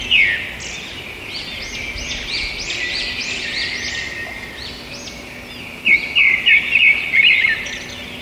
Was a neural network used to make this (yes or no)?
no